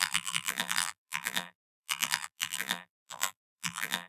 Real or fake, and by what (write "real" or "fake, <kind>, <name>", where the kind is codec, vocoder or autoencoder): fake, vocoder, BigVGAN v2